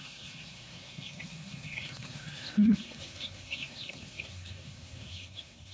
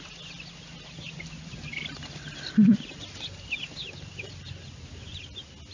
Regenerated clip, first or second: first